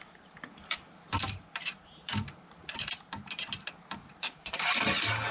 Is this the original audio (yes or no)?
no